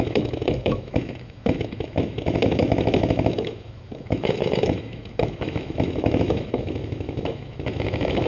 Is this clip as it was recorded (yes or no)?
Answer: no